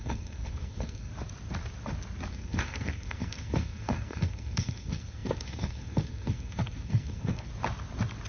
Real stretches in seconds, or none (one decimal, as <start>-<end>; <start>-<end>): 1.1-2.3; 7.5-8.3